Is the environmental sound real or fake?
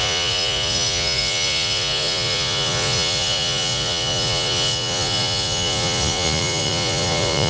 fake